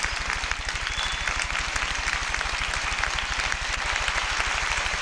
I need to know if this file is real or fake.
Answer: real